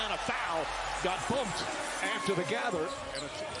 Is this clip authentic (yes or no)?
no